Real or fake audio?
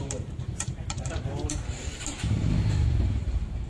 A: fake